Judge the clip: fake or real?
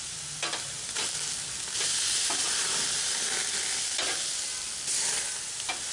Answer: real